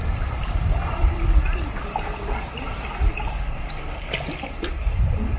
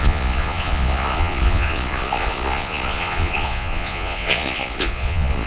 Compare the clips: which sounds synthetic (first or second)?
second